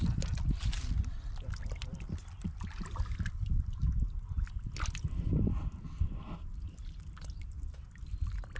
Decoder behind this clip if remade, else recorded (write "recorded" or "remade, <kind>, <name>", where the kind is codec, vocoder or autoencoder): recorded